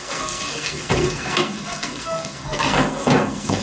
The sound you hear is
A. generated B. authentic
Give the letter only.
A